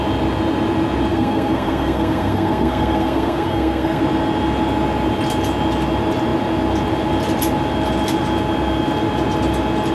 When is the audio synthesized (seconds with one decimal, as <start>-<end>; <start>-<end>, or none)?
1.1-4.0